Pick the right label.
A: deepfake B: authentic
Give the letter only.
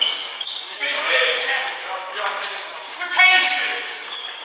A